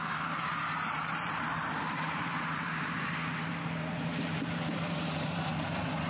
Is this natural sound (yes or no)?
no